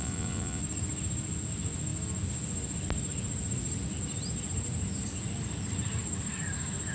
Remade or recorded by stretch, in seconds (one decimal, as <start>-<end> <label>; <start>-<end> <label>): 0.0-0.6 remade; 0.6-6.9 recorded

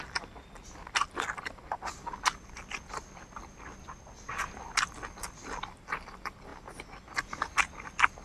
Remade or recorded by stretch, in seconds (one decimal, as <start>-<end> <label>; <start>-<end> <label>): 0.0-8.2 recorded